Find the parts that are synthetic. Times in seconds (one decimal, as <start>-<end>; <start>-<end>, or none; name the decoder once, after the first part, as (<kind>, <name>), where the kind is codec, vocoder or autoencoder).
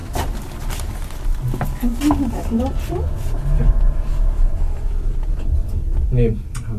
none